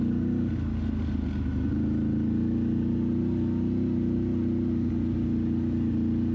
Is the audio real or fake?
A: real